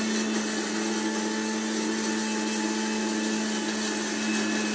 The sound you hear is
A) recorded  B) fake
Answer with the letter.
A